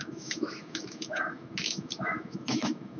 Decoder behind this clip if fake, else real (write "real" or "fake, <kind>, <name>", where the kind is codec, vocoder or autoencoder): fake, autoencoder, DAC-VAE